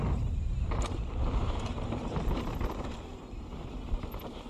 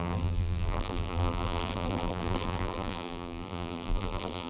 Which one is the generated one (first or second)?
second